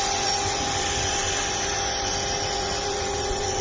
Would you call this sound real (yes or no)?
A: no